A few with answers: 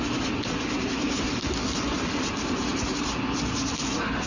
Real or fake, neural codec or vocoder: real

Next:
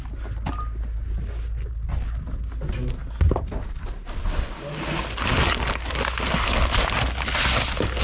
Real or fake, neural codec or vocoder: real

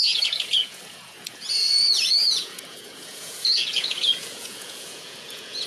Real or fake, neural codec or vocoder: fake, vocoder, Vocos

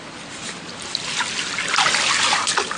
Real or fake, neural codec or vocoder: real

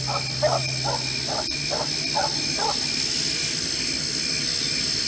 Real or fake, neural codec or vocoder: real